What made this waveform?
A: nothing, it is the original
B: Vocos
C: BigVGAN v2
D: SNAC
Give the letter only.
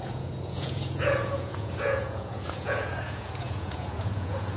B